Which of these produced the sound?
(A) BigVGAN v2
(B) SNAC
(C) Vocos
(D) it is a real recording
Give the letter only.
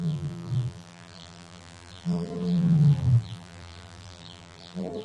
A